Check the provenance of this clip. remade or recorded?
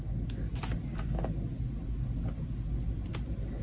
recorded